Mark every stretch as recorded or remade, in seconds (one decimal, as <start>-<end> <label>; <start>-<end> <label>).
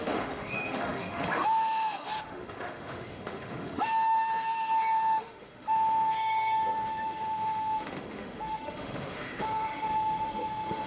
0.0-10.9 remade